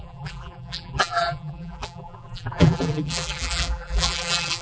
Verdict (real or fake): fake